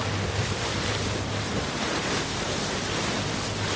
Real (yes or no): yes